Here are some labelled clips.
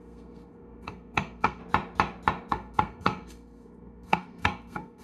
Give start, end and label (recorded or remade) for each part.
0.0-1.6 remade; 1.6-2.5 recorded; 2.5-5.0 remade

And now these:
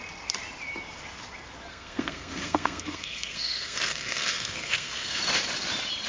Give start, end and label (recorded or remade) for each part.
0.0-1.7 recorded; 1.7-5.2 remade; 5.2-6.1 recorded

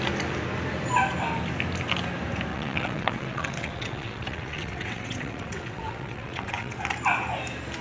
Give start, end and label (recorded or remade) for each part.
0.0-2.5 recorded; 2.5-6.8 remade; 6.8-7.8 recorded

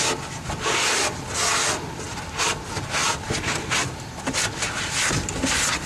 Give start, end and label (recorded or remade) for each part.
0.0-5.9 recorded

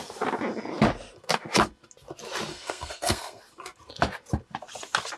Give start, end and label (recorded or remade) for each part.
0.0-2.5 recorded; 2.5-3.4 remade; 3.4-5.2 recorded